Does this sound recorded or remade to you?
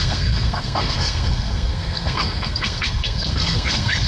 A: remade